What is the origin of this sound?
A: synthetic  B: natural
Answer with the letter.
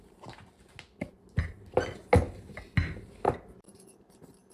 B